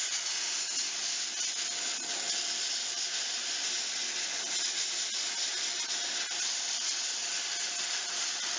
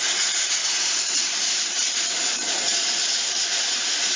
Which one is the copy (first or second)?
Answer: second